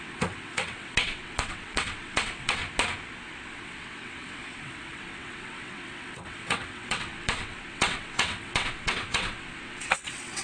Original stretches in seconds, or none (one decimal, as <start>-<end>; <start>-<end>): 2.6-3.5